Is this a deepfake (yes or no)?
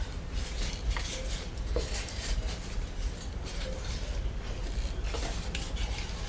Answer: no